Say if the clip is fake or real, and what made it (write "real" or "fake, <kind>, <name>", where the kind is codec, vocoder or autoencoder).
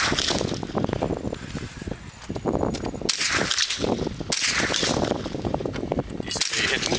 real